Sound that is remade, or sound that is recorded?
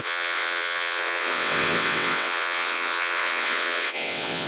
remade